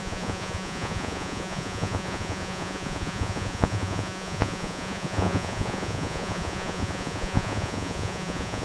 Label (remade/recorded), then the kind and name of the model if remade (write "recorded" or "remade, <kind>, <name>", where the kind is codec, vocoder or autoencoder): remade, vocoder, Vocos